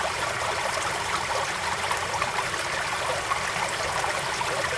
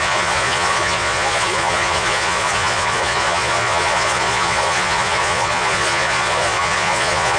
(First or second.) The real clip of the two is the first